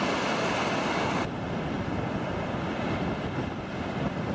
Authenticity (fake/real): real